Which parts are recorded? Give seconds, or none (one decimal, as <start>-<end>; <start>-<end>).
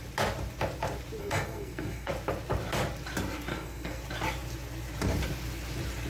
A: 0.0-1.2; 2.1-3.5; 4.0-6.1